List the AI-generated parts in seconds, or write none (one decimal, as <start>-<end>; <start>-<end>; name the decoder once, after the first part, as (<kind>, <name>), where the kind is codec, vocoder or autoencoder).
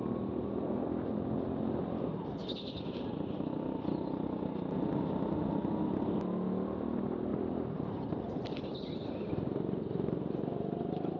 none